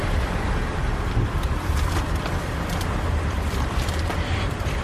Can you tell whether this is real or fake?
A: fake